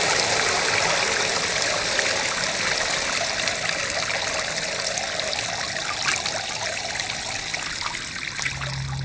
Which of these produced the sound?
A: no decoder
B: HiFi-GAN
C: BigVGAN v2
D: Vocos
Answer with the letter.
A